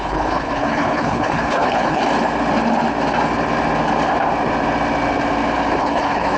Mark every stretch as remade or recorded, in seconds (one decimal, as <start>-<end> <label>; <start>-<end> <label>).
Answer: 0.0-2.0 remade; 2.0-5.8 recorded; 5.8-6.4 remade